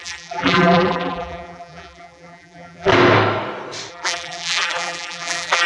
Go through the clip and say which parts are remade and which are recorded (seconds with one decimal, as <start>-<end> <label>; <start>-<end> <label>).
0.0-2.9 remade; 2.9-3.9 recorded; 3.9-5.7 remade